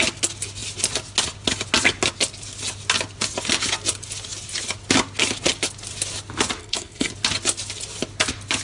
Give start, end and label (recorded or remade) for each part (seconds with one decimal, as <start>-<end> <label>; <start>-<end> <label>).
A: 0.0-6.6 recorded; 6.6-7.1 remade; 7.1-8.6 recorded